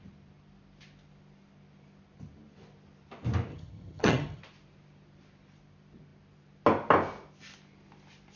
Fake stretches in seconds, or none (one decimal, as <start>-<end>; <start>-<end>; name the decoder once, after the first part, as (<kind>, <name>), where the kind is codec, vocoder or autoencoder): 3.5-4.4 (vocoder, HiFi-GAN)